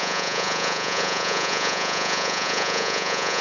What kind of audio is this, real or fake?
fake